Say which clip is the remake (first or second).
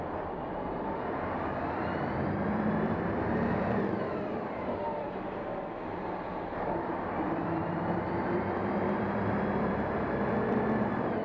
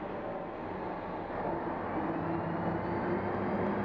first